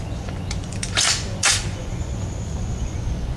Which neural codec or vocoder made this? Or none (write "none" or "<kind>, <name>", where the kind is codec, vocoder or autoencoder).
vocoder, Vocos